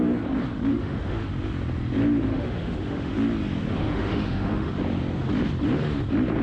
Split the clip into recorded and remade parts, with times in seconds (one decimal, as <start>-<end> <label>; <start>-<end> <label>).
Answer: 0.0-0.7 recorded; 0.7-1.3 remade; 1.3-2.3 recorded; 2.3-3.1 remade; 3.1-3.7 recorded; 3.7-4.7 remade; 4.7-6.4 recorded